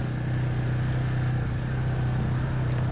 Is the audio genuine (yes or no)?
yes